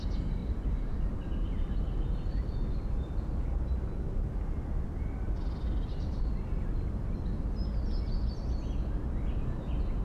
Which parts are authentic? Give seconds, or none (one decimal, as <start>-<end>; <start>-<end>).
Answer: 0.0-0.4; 3.0-10.0